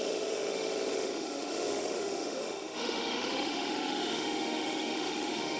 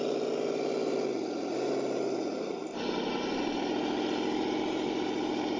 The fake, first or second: first